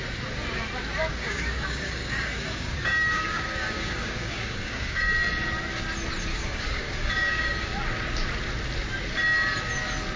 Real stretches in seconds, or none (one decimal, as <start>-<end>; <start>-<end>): 0.0-1.1; 5.0-6.3; 7.7-10.2